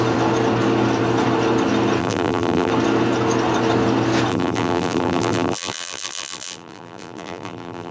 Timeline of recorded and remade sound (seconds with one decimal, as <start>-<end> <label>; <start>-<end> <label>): 0.0-2.0 recorded; 2.0-2.7 remade; 2.7-4.3 recorded; 4.3-7.9 remade